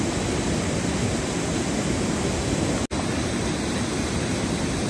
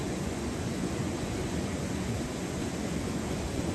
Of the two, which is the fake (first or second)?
second